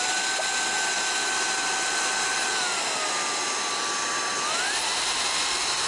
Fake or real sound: real